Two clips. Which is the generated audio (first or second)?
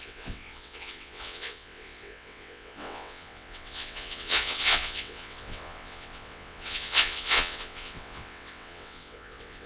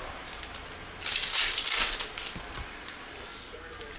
first